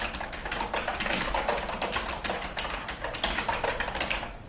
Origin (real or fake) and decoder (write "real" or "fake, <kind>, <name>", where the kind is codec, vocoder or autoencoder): fake, vocoder, BigVGAN v2